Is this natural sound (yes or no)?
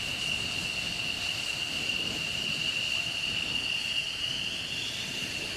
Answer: yes